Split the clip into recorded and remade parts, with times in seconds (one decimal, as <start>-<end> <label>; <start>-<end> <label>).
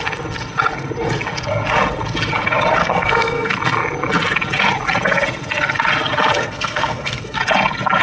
0.0-2.8 recorded; 2.8-3.5 remade; 3.5-6.4 recorded; 6.4-7.4 remade; 7.4-8.0 recorded